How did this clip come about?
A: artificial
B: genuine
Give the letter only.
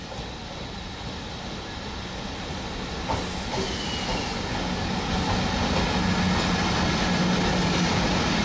B